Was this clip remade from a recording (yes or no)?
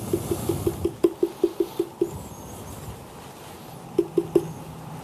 no